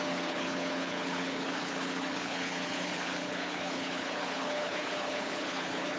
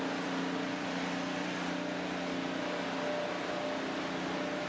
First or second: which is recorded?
second